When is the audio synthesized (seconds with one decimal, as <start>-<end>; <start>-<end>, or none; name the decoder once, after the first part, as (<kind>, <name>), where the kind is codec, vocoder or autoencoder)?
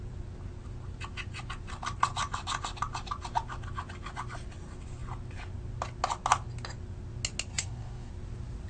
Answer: 7.5-8.1 (codec, DAC)